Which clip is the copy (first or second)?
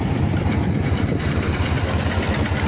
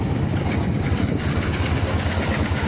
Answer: second